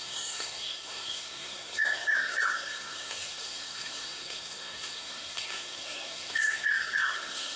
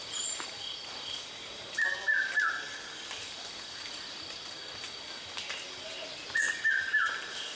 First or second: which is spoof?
first